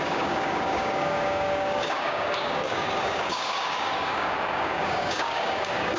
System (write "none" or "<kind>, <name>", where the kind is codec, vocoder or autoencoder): codec, DAC